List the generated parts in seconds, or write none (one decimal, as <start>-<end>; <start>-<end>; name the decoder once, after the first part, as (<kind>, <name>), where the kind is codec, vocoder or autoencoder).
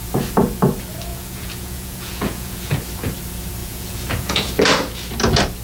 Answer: 1.1-2.8 (vocoder, Vocos); 3.6-4.5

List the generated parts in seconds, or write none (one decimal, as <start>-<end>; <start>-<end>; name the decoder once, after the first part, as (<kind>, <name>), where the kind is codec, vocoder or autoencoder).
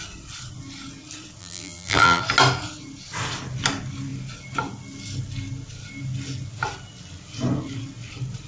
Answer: 1.4-2.2 (vocoder, BigVGAN v2)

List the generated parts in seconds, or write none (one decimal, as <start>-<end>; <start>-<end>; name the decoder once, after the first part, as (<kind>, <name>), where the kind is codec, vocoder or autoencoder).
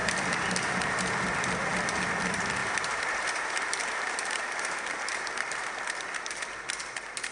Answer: 2.6-5.8 (vocoder, BigVGAN v2)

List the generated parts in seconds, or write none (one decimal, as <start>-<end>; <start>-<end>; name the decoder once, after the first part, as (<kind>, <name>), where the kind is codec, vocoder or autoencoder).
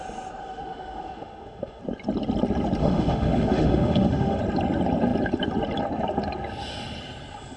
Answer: 0.4-1.8 (autoencoder, DAC-VAE); 2.8-4.4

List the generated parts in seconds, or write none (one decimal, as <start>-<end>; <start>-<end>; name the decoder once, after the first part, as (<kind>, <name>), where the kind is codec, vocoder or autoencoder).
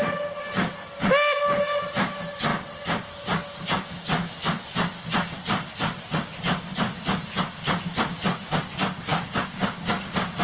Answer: 9.1-10.4 (codec, DAC)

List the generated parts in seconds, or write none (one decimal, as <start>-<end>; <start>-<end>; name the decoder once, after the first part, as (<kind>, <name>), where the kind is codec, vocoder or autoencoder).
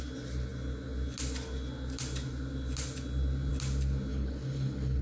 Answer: 4.1-5.0 (codec, HILCodec)